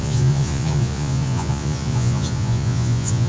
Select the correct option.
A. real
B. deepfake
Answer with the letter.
B